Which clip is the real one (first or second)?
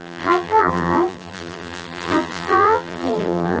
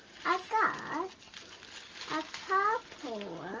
second